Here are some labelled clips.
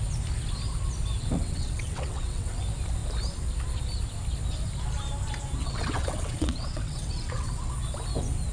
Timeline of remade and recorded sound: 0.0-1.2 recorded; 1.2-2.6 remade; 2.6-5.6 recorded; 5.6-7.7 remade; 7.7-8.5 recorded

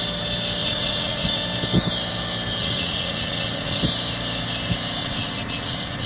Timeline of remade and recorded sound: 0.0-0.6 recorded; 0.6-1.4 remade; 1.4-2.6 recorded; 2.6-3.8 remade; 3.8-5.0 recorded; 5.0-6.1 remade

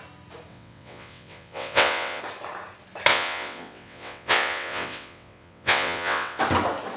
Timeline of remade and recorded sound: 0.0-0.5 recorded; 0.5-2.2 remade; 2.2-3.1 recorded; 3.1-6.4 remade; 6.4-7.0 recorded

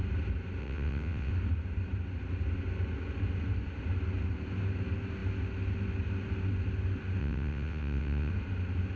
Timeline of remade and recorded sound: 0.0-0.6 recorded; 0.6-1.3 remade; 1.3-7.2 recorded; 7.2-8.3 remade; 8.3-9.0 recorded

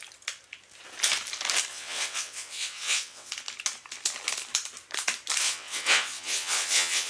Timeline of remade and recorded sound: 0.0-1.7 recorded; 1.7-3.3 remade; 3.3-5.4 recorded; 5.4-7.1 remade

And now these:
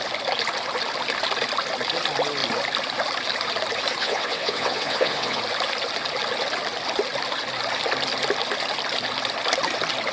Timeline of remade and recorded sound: 0.0-4.0 recorded; 4.0-5.4 remade; 5.4-10.1 recorded

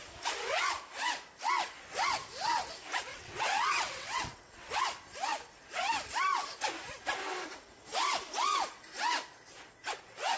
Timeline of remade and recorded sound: 0.0-3.1 recorded; 3.1-4.7 remade; 4.7-10.4 recorded

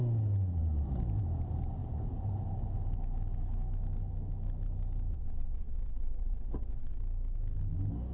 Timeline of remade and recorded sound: 0.0-5.1 recorded; 5.1-7.0 remade; 7.0-8.1 recorded